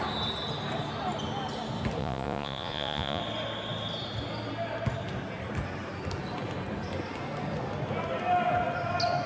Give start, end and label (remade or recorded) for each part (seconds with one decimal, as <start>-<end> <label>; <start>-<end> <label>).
0.0-2.0 recorded; 2.0-3.2 remade; 3.2-9.3 recorded